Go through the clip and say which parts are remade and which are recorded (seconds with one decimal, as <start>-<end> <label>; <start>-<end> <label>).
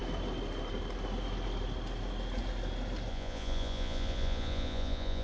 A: 0.0-3.1 recorded; 3.1-5.2 remade